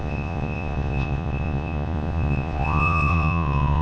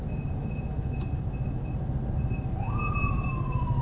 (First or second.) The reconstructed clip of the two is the first